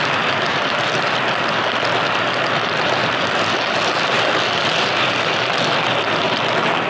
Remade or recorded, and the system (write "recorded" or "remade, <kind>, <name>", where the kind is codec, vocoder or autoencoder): recorded